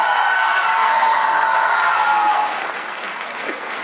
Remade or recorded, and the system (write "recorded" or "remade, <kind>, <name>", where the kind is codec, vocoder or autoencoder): remade, codec, SNAC